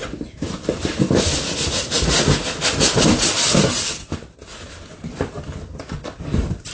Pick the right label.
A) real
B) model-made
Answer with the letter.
A